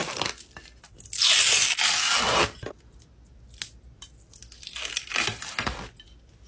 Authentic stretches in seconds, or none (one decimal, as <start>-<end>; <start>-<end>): 0.0-6.5